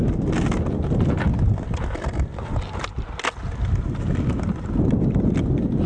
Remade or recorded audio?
recorded